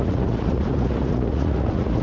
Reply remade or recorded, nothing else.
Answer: remade